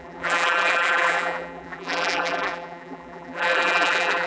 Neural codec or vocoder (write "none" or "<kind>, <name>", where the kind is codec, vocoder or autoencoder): vocoder, BigVGAN v2